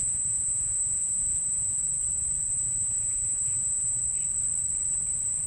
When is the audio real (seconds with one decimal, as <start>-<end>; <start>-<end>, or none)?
1.8-2.5; 4.0-5.5